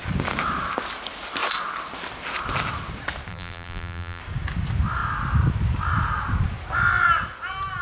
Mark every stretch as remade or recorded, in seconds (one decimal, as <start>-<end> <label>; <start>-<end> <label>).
0.0-3.3 recorded; 3.3-4.2 remade; 4.2-7.8 recorded